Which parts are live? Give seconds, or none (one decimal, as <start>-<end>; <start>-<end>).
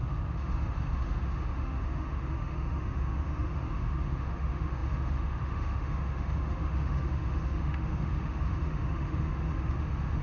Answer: none